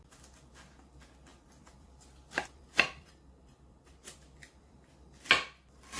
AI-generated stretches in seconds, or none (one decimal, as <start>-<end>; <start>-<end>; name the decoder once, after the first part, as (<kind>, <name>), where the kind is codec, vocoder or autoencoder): 1.3-4.9 (vocoder, BigVGAN v2)